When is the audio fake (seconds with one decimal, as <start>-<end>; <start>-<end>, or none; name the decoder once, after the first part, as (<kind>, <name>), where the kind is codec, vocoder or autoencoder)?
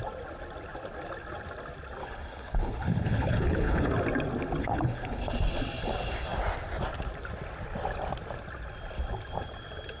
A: 2.0-3.9 (codec, HILCodec); 4.6-5.3